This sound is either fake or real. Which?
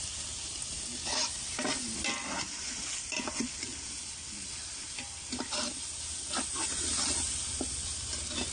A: real